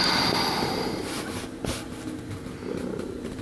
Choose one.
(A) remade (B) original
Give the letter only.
B